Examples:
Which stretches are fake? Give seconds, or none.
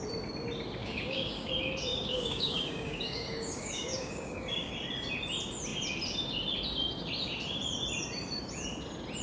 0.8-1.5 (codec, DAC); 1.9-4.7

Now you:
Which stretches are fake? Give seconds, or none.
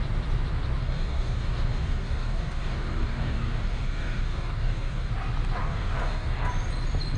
0.8-5.1 (codec, DAC); 5.6-6.5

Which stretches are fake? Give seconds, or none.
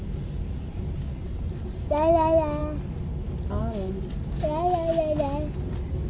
none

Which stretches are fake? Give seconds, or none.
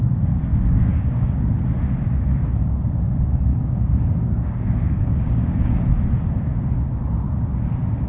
0.5-1.4 (codec, DAC); 3.5-5.9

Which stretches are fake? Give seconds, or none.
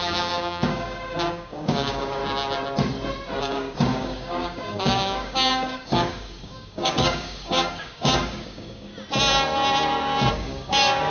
0.0-2.2 (codec, DAC); 3.4-8.9; 10.3-11.1